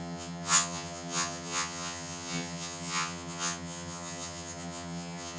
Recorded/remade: remade